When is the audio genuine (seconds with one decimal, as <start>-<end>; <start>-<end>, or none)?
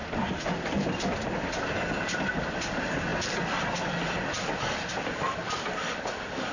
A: 0.0-6.5